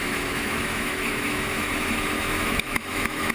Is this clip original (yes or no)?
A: no